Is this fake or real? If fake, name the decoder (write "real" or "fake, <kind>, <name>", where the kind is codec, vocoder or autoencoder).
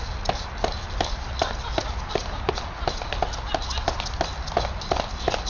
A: real